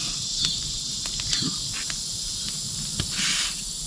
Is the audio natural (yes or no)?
yes